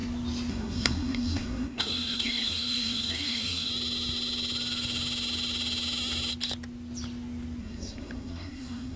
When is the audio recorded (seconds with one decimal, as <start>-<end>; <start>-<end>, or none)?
0.0-0.5; 3.7-7.6